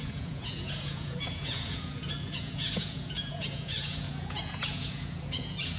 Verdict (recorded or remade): remade